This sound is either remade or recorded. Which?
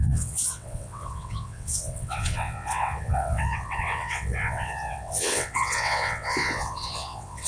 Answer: remade